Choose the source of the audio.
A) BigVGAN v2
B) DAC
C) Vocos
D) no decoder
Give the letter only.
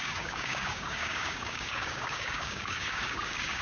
B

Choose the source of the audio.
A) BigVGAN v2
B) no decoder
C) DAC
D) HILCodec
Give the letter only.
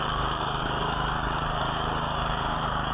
C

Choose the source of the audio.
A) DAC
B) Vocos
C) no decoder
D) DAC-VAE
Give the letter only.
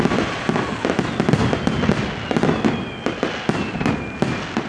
C